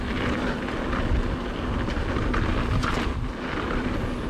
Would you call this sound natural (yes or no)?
yes